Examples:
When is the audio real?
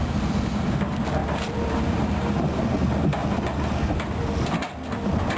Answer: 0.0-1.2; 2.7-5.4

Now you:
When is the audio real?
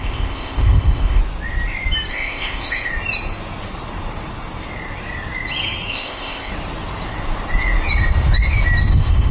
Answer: 1.2-2.1; 2.9-5.9; 6.5-8.9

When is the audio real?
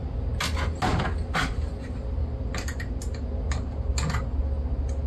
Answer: 0.0-5.1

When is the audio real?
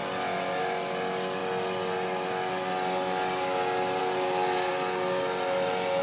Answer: 0.0-6.0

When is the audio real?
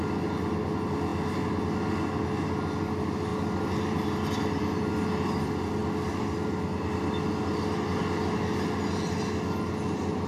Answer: 0.0-10.3